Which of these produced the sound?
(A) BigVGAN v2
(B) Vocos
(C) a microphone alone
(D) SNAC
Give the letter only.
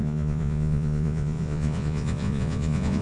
B